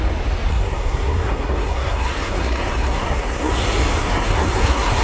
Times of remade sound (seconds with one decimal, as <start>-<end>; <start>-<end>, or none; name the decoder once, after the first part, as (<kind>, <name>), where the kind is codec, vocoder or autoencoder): 0.5-3.5 (codec, SNAC); 4.0-5.0